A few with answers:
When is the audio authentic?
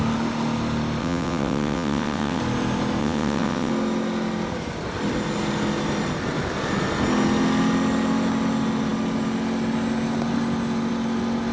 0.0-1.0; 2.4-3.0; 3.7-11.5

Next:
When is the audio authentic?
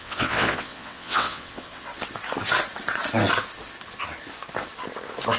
1.9-5.4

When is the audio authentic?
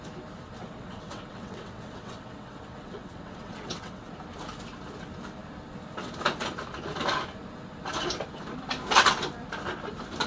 0.0-0.6; 4.1-10.3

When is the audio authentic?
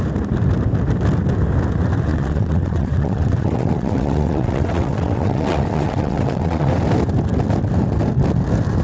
0.0-2.1; 6.7-8.8